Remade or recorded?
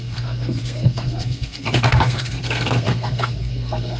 remade